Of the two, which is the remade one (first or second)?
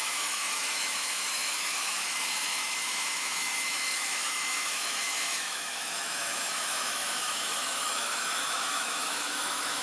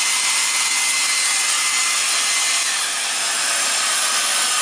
first